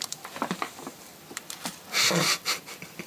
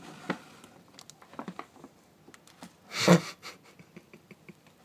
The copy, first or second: first